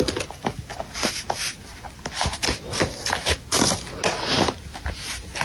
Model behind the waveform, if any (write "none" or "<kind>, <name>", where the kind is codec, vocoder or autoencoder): none